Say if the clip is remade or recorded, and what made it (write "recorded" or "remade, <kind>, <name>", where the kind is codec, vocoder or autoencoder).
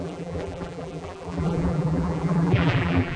remade, vocoder, BigVGAN v2